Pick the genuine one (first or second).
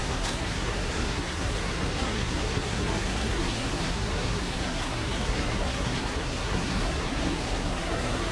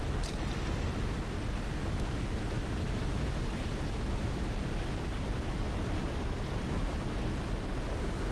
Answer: second